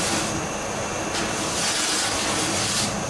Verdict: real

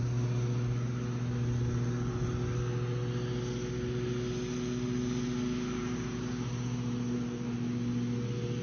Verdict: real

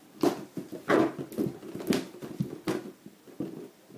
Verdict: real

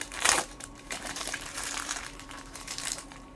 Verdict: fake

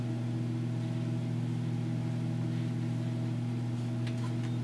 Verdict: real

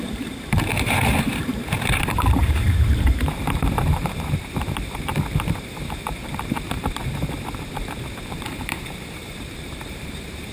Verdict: fake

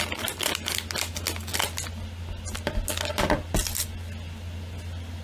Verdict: real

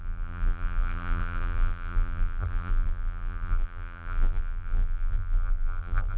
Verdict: fake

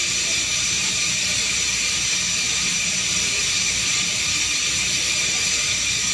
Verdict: fake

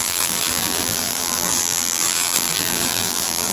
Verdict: fake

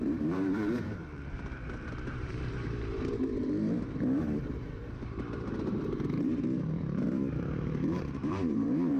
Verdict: fake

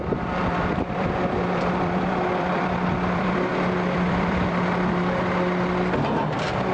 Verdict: fake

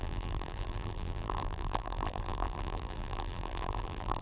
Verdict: fake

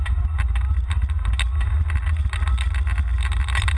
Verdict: real